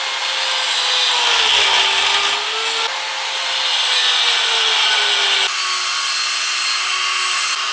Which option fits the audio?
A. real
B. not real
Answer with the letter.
A